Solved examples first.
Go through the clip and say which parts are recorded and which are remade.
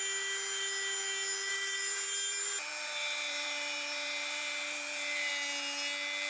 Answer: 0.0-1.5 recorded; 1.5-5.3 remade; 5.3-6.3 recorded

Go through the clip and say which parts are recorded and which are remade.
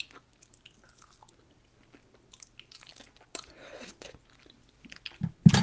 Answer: 0.0-5.6 recorded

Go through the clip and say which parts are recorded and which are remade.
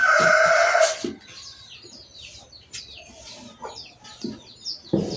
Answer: 0.0-5.2 recorded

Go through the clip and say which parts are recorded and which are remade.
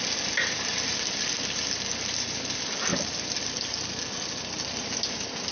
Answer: 0.0-5.5 recorded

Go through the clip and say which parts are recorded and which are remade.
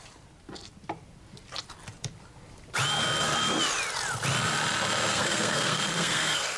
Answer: 0.0-5.1 recorded; 5.1-6.6 remade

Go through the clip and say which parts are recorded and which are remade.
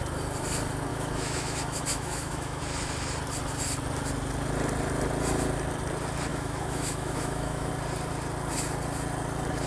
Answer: 0.0-0.9 recorded; 0.9-2.6 remade; 2.6-6.3 recorded; 6.3-7.7 remade; 7.7-9.7 recorded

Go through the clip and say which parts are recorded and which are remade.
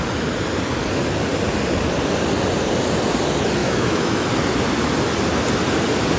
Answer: 0.0-3.6 recorded; 3.6-4.2 remade; 4.2-6.2 recorded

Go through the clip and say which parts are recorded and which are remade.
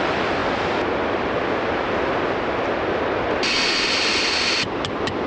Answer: 0.0-5.3 recorded